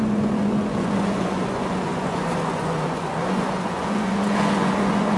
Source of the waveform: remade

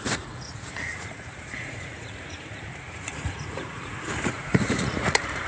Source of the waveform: remade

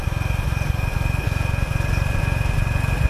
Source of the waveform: recorded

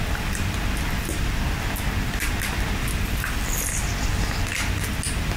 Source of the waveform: recorded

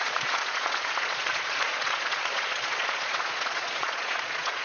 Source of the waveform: remade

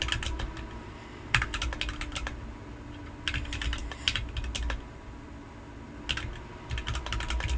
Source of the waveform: recorded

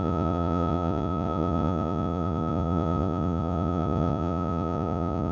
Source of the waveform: remade